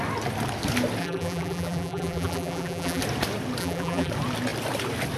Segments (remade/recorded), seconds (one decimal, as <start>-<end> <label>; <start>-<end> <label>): 0.0-1.0 recorded; 1.0-3.0 remade; 3.0-3.6 recorded; 3.6-4.1 remade; 4.1-5.2 recorded